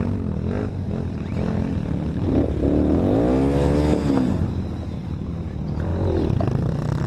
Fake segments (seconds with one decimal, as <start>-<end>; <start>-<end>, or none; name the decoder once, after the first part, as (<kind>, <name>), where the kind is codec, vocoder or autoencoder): none